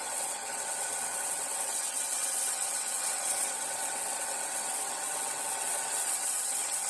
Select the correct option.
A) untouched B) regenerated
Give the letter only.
B